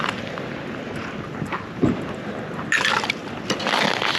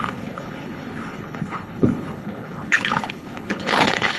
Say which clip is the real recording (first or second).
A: first